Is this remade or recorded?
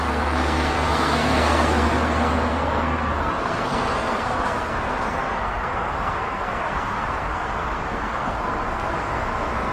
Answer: remade